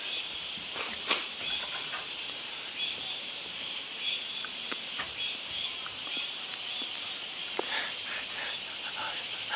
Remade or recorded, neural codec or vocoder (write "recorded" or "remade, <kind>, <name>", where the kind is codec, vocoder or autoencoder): remade, vocoder, BigVGAN v2